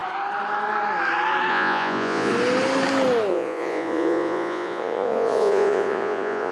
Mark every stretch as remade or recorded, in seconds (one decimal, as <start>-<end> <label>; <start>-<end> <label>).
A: 0.0-1.5 recorded; 1.5-2.3 remade; 2.3-3.3 recorded; 3.3-6.5 remade